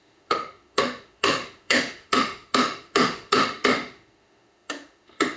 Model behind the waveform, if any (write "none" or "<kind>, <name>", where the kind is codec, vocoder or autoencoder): autoencoder, DAC-VAE